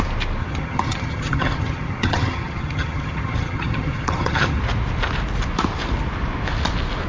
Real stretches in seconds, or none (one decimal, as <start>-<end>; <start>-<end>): 0.0-0.4; 4.6-7.1